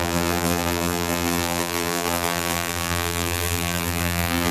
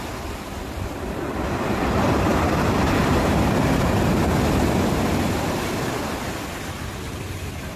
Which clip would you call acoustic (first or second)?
second